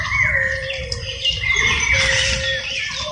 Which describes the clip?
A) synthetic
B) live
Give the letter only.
B